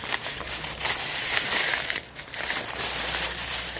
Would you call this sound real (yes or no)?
no